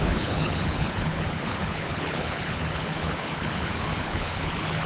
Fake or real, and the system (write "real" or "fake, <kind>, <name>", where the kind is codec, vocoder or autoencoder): fake, codec, HILCodec